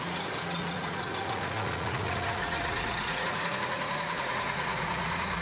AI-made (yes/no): yes